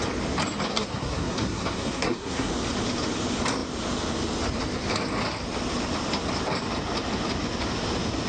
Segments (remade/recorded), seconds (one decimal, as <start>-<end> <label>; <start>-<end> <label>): 0.0-0.7 recorded; 0.7-2.5 remade; 2.5-8.3 recorded